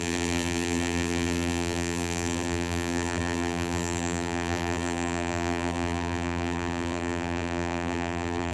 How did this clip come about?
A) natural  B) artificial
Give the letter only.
B